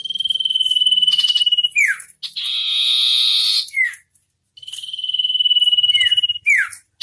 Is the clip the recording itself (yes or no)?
yes